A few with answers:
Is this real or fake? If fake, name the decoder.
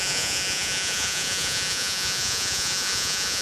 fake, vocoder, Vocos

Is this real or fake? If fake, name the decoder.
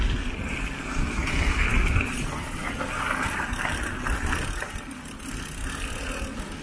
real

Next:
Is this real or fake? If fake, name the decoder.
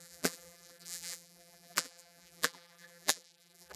fake, vocoder, BigVGAN v2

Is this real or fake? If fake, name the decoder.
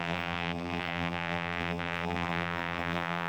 fake, vocoder, BigVGAN v2